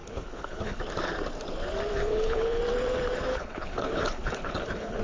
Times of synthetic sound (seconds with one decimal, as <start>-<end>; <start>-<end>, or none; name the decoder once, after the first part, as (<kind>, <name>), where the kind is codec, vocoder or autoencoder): 0.0-0.8 (codec, HILCodec); 1.9-2.6; 3.3-5.0